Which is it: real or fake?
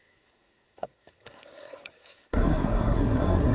fake